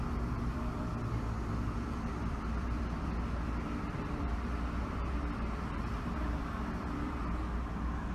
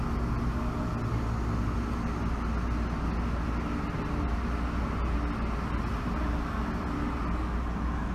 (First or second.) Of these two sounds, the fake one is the first